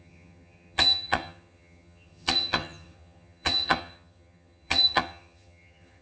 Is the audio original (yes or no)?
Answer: no